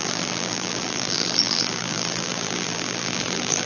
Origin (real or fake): fake